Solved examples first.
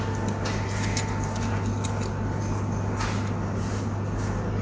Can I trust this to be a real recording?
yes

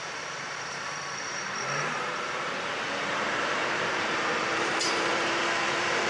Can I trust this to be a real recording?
no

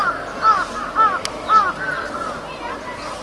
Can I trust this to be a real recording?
yes